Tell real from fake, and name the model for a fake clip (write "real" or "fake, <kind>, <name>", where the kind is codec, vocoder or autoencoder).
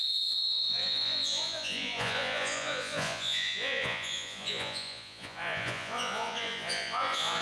fake, vocoder, Vocos